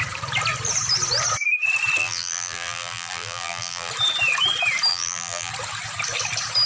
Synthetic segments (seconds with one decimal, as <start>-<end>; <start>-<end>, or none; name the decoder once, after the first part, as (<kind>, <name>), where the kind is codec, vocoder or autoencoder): 2.0-3.9 (vocoder, BigVGAN v2); 4.9-5.5